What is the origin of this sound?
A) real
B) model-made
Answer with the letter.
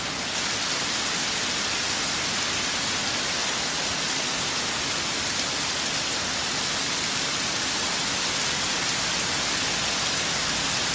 A